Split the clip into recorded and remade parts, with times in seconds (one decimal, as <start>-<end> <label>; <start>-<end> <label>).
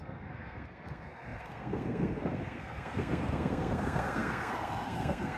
0.0-5.4 remade